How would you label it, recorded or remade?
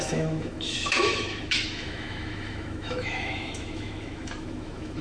remade